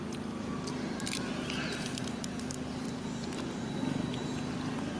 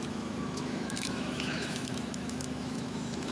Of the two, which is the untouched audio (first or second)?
first